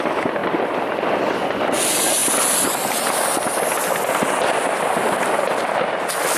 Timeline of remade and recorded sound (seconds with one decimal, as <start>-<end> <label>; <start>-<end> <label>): 0.0-6.4 recorded

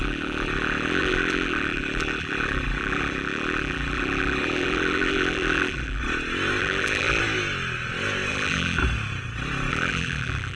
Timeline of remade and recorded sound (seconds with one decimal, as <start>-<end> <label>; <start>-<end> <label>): 0.0-6.0 remade; 6.0-6.6 recorded; 6.6-7.2 remade; 7.2-8.3 recorded; 8.3-8.8 remade; 8.8-9.7 recorded; 9.7-10.6 remade

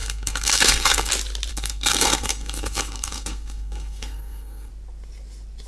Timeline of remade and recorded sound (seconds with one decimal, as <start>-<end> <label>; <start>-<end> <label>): 0.0-1.1 remade; 1.1-1.5 recorded; 1.5-4.7 remade; 4.7-5.7 recorded

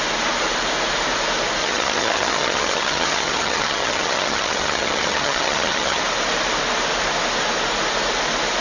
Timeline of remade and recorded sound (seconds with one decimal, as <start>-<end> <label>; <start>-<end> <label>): 0.0-1.6 recorded; 1.6-6.0 remade; 6.0-8.6 recorded

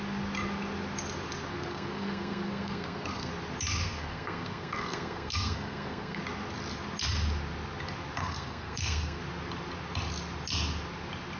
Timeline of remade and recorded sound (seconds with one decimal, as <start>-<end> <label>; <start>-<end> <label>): 0.0-1.5 recorded; 1.5-3.3 remade; 3.3-3.8 recorded; 3.8-6.2 remade; 6.2-8.2 recorded; 8.2-9.2 remade; 9.2-11.4 recorded

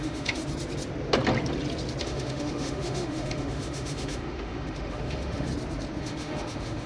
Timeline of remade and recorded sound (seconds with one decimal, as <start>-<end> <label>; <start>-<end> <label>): 0.0-0.4 remade; 0.4-2.0 recorded; 2.0-5.5 remade; 5.5-6.0 recorded; 6.0-6.9 remade